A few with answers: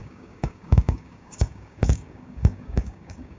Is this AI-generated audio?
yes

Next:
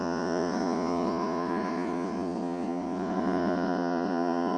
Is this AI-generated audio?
yes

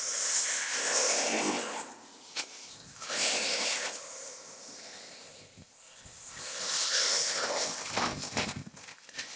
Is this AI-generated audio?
yes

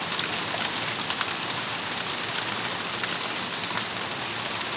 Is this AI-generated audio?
no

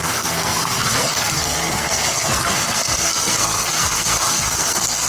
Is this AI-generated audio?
yes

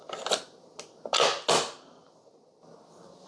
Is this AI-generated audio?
no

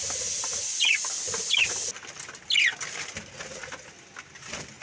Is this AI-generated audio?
no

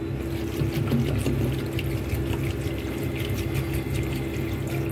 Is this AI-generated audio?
no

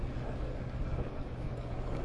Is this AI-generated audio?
yes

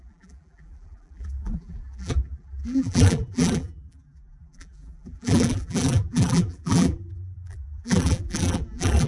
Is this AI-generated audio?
yes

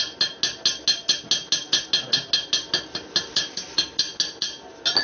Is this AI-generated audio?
no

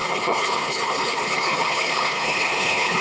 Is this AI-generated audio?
yes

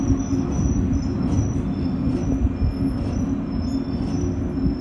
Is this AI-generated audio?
no